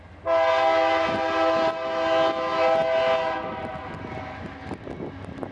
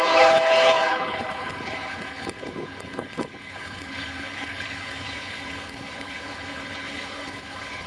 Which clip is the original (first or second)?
first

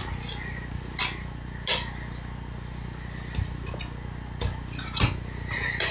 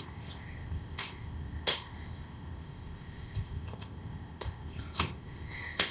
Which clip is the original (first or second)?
first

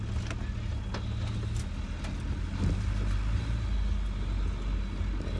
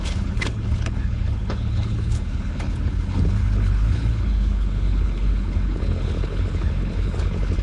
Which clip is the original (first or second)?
first